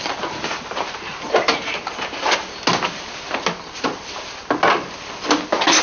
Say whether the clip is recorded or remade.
recorded